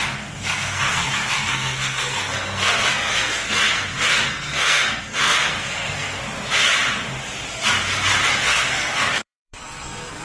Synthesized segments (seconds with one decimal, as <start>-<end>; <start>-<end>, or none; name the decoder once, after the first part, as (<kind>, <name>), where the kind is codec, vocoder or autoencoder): 0.0-6.2 (codec, SNAC); 8.4-10.2